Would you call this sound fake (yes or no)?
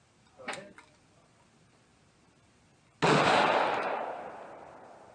no